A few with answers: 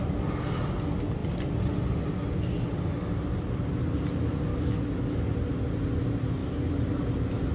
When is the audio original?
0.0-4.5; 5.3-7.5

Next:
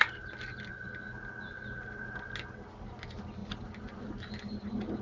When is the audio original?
0.0-5.0

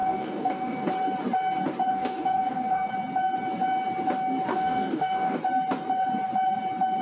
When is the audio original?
0.9-1.9; 2.9-4.5; 5.4-7.0

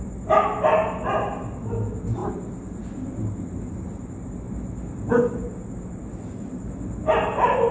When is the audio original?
0.0-7.7

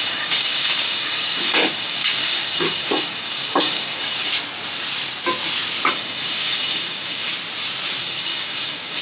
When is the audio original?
4.3-5.9; 7.3-8.0

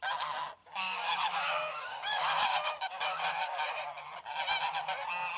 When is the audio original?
0.0-0.6; 3.8-5.4